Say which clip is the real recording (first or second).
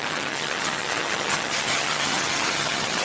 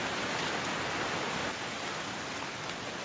second